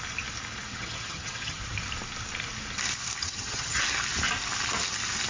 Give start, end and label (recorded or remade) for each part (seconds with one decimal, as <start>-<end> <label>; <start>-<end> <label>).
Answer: 0.0-0.7 recorded; 0.7-1.6 remade; 1.6-3.2 recorded; 3.2-3.8 remade; 3.8-5.3 recorded